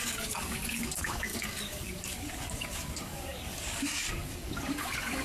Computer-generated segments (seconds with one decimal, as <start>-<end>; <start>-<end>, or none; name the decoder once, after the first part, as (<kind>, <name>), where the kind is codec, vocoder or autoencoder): 0.0-5.2 (codec, DAC)